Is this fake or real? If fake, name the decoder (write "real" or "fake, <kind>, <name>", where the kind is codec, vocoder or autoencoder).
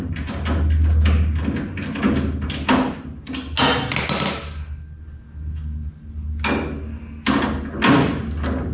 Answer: real